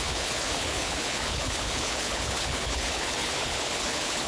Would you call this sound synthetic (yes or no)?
yes